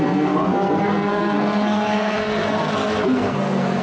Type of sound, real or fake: fake